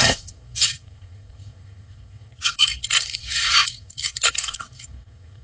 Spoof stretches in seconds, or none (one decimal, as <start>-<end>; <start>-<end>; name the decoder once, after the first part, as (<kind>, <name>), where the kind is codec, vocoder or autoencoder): 0.0-5.4 (codec, SNAC)